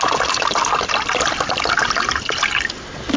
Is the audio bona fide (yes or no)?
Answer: yes